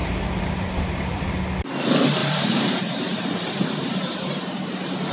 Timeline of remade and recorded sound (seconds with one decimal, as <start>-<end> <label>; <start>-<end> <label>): 0.0-1.3 remade; 1.3-2.2 recorded; 2.2-4.3 remade; 4.3-5.1 recorded